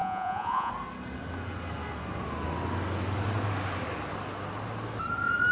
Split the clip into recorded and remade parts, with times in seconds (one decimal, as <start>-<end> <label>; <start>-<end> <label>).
0.0-0.7 remade; 0.7-5.5 recorded